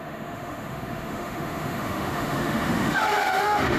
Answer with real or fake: fake